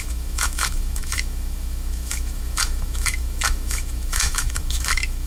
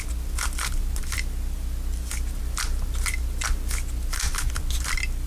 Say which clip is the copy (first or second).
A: first